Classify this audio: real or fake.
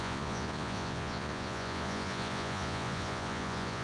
fake